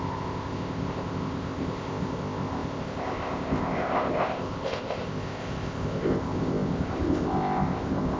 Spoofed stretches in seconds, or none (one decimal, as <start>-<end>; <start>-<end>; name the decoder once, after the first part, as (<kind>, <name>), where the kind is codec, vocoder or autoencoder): 0.0-8.2 (codec, ZipCodec)